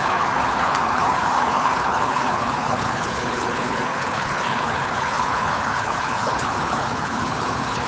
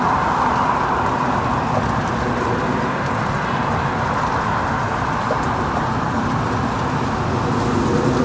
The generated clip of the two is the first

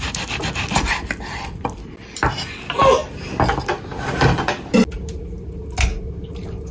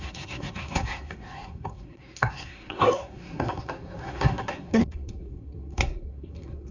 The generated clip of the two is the second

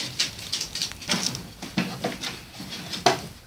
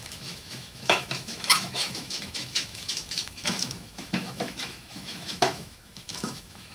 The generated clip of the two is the second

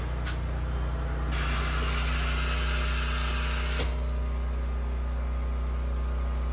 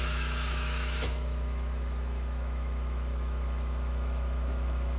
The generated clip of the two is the second